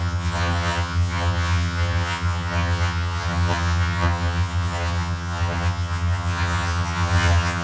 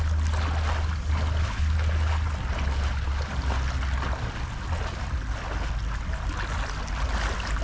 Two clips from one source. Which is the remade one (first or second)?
first